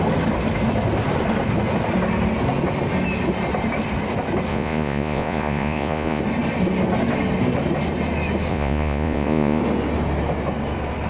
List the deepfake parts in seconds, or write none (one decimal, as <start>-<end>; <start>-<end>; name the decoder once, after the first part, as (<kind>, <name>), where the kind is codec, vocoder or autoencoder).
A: 4.5-6.2 (vocoder, Vocos); 8.5-9.6